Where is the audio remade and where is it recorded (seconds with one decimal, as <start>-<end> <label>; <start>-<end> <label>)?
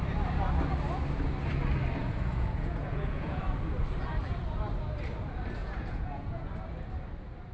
0.0-2.0 recorded; 2.0-3.4 remade; 3.4-5.6 recorded; 5.6-6.5 remade; 6.5-7.5 recorded